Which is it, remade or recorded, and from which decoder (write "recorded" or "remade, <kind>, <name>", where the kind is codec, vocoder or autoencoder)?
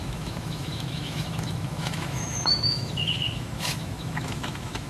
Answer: remade, autoencoder, DAC-VAE